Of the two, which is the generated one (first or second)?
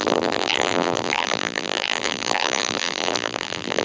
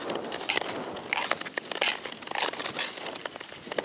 first